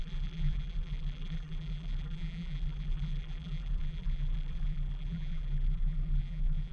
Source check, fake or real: fake